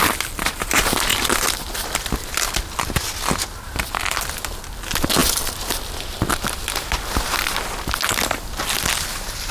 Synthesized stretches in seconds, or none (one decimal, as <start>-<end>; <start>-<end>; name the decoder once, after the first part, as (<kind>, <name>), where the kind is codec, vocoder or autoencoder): none

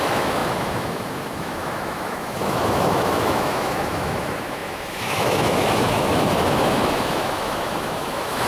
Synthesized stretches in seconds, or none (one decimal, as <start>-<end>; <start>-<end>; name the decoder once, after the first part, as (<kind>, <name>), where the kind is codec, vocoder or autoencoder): 0.0-8.5 (autoencoder, DAC-VAE)

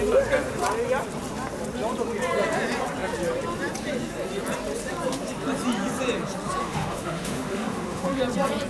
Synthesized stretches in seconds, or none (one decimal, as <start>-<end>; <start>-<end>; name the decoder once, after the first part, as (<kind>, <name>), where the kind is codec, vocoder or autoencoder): 6.6-8.2 (autoencoder, DAC-VAE)

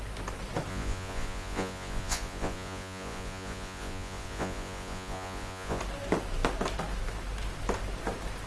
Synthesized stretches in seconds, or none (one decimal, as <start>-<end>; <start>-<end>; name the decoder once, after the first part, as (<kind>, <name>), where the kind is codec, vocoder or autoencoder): 0.7-5.8 (vocoder, Vocos)

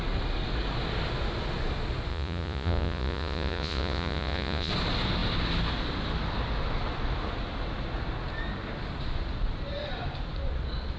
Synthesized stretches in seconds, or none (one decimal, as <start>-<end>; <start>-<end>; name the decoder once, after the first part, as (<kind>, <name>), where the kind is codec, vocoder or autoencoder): 2.1-4.7 (vocoder, Vocos)